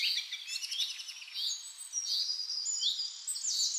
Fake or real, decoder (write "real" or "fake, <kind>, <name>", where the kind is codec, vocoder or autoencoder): real